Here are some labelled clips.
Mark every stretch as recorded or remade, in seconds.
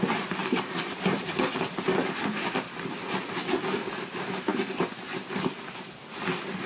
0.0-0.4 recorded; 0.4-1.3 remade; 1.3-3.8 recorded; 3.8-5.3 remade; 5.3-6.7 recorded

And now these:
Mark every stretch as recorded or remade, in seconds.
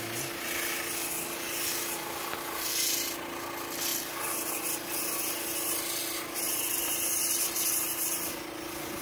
0.0-9.0 recorded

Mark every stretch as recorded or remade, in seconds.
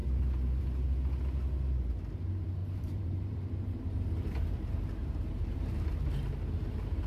0.0-2.6 recorded; 2.6-3.8 remade; 3.8-5.0 recorded; 5.0-5.7 remade; 5.7-7.1 recorded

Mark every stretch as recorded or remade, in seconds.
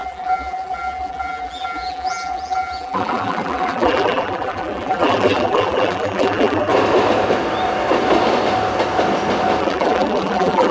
0.0-6.7 remade; 6.7-9.6 recorded; 9.6-10.7 remade